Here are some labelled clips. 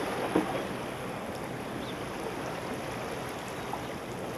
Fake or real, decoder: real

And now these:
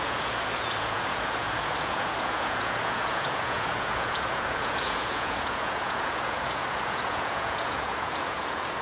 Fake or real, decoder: fake, vocoder, Vocos